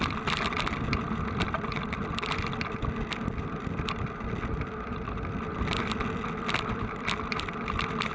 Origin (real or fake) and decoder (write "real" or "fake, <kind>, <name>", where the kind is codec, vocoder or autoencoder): fake, vocoder, BigVGAN v2